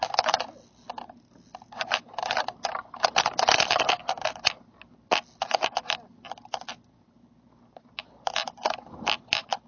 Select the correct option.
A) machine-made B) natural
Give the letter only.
B